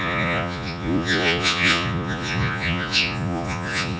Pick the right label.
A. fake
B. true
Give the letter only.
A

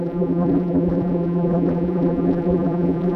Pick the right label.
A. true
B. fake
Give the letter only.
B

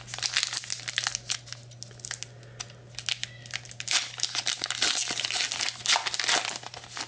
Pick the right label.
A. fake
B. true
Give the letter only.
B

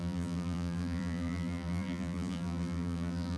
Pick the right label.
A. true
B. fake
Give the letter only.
B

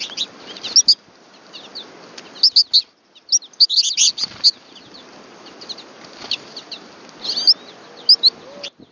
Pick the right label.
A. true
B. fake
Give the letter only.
A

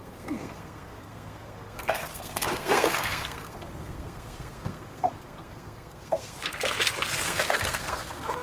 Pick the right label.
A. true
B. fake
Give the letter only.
B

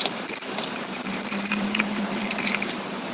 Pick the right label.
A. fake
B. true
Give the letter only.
A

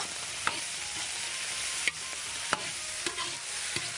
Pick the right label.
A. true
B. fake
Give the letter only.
A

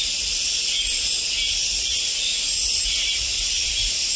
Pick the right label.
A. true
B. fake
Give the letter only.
A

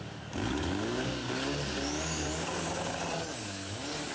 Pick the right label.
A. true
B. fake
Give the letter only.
B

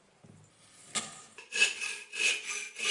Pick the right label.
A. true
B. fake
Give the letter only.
A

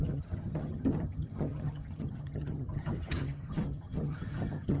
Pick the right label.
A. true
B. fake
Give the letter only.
B